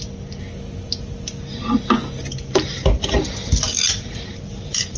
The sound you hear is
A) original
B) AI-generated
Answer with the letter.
A